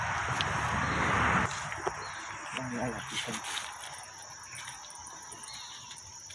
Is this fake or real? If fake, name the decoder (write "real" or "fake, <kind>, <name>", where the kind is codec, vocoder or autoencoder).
real